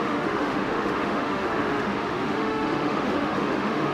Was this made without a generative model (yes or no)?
no